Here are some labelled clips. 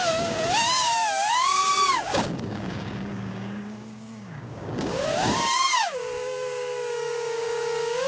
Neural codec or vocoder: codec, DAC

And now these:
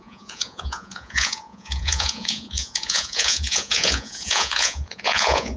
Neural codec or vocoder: vocoder, Vocos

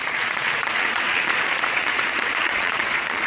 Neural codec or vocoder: vocoder, Vocos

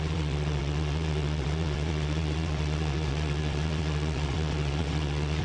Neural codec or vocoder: vocoder, WaveNeXt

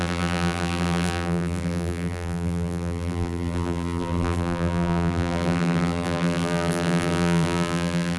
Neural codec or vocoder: vocoder, BigVGAN v2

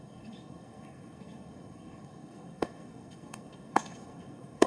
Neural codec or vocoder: codec, SNAC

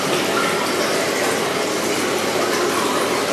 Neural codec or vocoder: none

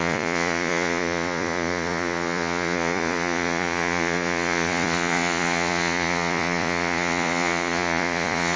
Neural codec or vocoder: vocoder, Vocos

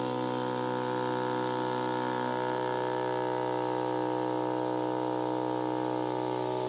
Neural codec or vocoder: none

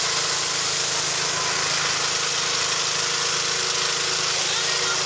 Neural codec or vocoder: none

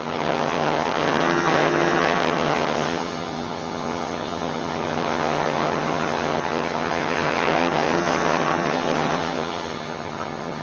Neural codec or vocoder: vocoder, HiFi-GAN